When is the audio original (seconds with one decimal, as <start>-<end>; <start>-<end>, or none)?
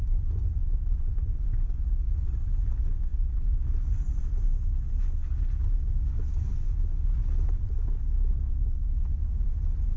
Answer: 0.0-10.0